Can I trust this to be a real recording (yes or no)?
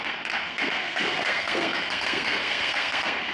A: no